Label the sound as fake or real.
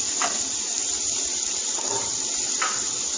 fake